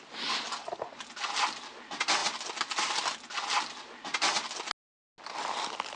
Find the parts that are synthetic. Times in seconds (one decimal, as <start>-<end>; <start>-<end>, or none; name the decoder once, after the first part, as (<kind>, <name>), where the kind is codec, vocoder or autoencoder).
none